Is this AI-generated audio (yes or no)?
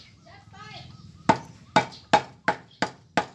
no